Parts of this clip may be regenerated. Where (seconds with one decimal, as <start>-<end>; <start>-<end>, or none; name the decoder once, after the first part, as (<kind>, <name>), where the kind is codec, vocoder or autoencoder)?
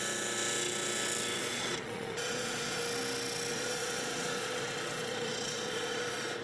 1.4-2.8 (vocoder, Vocos); 3.5-6.4